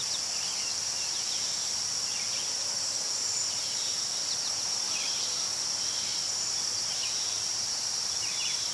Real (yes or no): yes